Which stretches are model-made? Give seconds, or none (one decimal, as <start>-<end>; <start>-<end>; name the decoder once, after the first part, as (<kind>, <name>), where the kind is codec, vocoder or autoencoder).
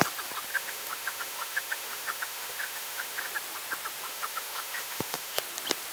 0.5-3.3 (autoencoder, DAC-VAE); 4.1-5.4